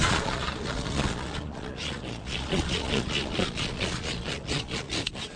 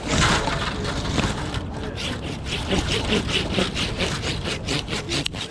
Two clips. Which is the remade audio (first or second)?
first